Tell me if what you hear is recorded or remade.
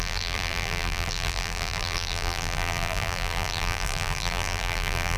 remade